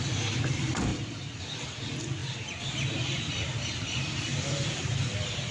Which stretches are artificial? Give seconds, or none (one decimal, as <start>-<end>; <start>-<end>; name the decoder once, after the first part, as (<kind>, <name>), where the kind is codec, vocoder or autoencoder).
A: none